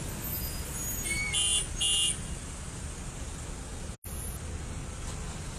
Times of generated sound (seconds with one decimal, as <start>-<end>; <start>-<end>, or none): none